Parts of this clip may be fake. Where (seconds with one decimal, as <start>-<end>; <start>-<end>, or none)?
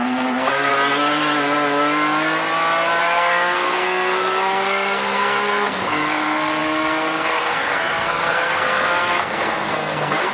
0.0-0.7; 3.0-10.3